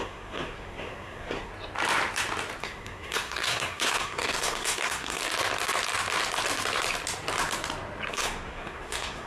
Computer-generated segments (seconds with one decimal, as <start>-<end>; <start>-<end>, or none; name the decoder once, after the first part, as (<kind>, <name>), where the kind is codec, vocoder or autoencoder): 0.0-1.5 (codec, SNAC); 2.6-5.2; 8.1-9.3